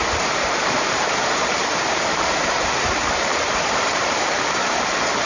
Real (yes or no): no